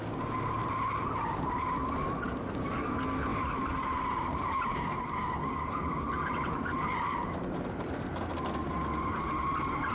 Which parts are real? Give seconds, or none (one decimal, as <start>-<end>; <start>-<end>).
0.0-0.6; 1.6-3.3; 8.3-9.9